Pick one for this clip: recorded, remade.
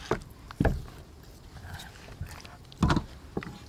recorded